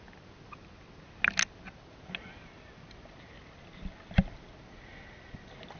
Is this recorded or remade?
recorded